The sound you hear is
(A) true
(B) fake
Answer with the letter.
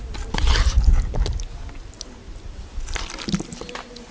A